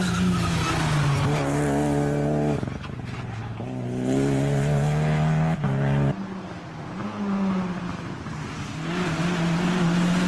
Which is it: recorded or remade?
recorded